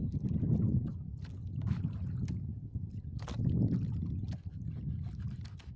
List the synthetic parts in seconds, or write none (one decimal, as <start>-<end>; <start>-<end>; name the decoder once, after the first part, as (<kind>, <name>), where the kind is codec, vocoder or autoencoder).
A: none